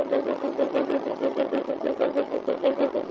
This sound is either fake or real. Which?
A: fake